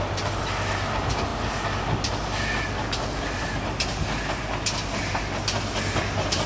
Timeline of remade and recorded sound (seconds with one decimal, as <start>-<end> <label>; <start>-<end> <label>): 0.0-6.5 recorded

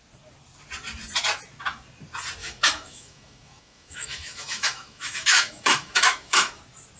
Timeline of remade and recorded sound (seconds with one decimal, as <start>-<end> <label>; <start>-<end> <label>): 0.0-2.4 recorded; 2.4-6.6 remade; 6.6-7.0 recorded

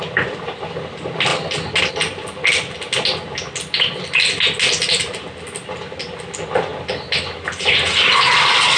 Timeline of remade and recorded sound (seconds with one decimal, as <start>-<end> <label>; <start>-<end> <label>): 0.0-8.8 recorded

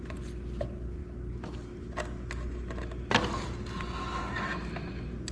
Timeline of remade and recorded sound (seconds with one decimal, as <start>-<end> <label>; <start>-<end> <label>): 0.0-5.3 recorded

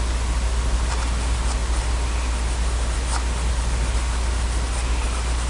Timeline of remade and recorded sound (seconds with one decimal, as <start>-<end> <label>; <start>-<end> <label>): 0.0-5.5 recorded

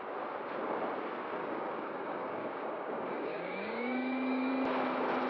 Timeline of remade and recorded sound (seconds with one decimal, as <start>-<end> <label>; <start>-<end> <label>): 0.0-1.4 recorded; 1.4-4.5 remade; 4.5-5.3 recorded